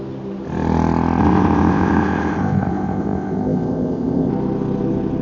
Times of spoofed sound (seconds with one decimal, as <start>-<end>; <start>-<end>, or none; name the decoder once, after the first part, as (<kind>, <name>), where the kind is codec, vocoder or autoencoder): 1.2-4.3 (codec, ZipCodec)